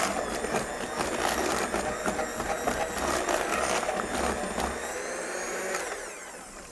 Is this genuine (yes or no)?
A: yes